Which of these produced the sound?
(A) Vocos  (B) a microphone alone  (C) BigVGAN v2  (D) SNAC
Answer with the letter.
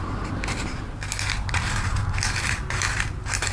B